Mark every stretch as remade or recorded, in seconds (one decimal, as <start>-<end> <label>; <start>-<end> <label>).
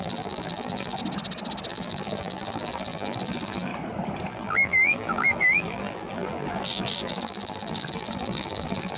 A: 0.0-1.0 remade; 1.0-1.7 recorded; 1.7-3.7 remade; 3.7-4.3 recorded; 4.3-9.0 remade